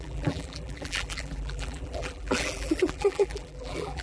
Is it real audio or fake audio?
fake